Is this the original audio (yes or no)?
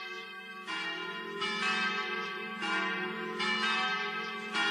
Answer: yes